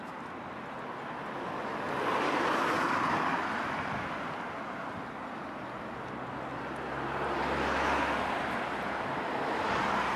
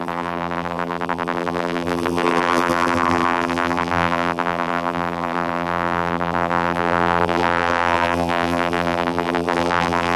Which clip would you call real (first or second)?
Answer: first